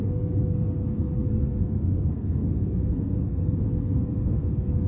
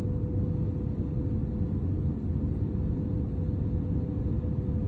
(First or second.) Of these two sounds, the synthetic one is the first